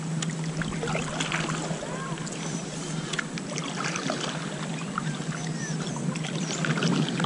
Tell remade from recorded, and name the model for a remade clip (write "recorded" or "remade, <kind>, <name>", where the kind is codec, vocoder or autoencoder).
recorded